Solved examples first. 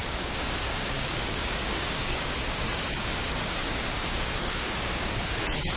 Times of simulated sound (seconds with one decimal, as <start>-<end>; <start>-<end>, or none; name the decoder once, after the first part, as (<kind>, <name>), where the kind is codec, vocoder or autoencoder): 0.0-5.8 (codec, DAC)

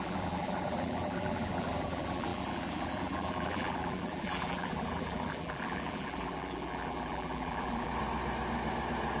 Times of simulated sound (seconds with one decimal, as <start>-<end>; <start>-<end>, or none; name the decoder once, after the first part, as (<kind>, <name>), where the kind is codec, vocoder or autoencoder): 0.0-7.9 (vocoder, BigVGAN v2)

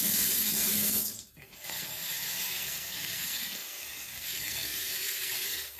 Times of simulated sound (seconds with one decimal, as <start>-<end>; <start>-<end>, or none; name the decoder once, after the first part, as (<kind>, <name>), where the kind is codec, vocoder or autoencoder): 0.0-5.8 (codec, SNAC)